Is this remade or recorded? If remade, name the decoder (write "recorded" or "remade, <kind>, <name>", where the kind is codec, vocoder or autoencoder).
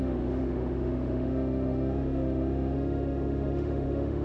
remade, autoencoder, DAC-VAE